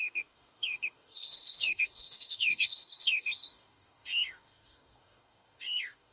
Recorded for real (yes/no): no